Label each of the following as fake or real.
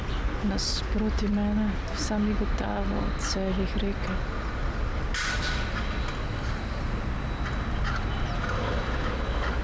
real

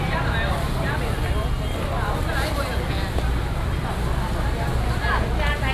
real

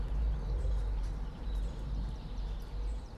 fake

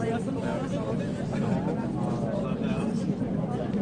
real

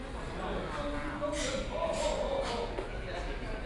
real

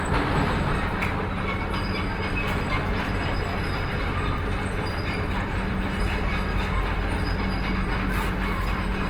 real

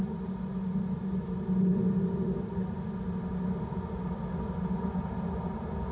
real